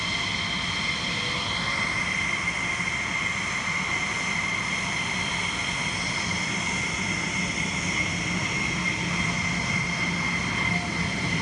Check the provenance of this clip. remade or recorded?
recorded